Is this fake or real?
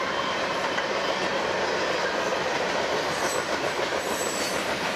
fake